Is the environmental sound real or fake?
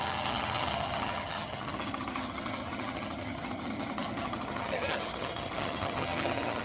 fake